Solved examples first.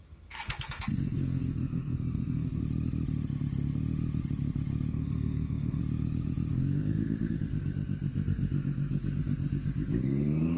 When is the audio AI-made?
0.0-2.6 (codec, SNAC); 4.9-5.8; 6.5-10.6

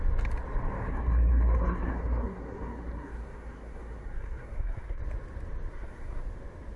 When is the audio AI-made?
0.9-5.0 (codec, SNAC); 5.7-6.2

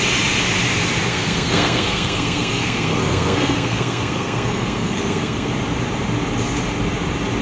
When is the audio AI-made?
1.1-5.5 (codec, SNAC)

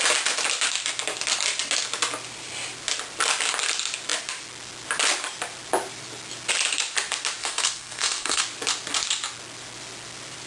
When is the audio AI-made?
7.4-8.4 (codec, SNAC)

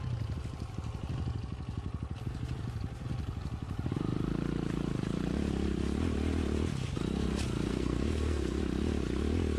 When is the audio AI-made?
7.7-8.6 (codec, SNAC)

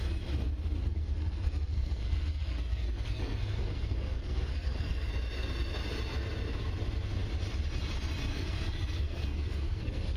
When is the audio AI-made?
0.8-5.1 (codec, SNAC); 8.3-10.2

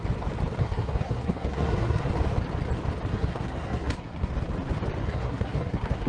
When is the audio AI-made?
0.6-2.1 (codec, SNAC); 3.1-4.3; 5.0-6.1

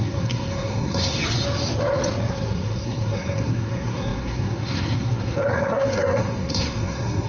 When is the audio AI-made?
0.0-1.2 (codec, SNAC); 2.3-7.3